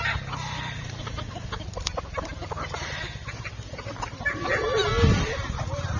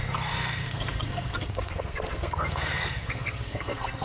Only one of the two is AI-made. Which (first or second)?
second